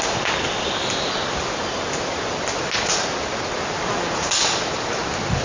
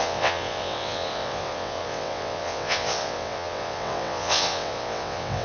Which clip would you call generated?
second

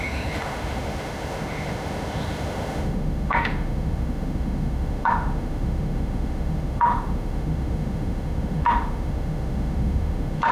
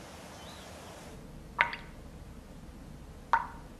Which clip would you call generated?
first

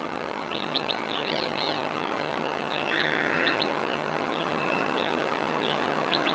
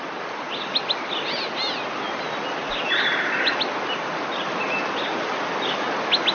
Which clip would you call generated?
first